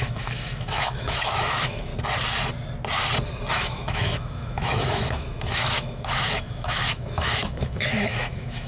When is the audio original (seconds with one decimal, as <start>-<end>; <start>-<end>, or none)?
1.9-3.5